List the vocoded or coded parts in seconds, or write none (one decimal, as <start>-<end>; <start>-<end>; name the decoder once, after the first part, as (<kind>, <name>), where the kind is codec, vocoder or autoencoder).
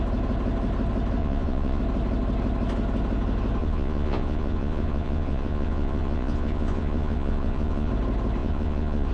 1.2-1.8 (vocoder, Vocos); 3.6-7.9; 8.4-9.1